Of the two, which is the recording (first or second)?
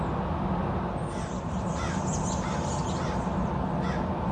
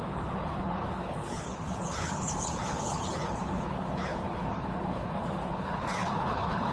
first